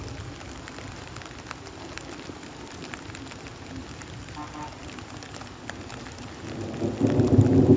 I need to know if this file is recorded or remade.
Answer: recorded